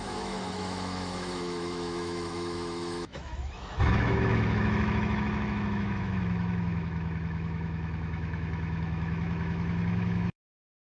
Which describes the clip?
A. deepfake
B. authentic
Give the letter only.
A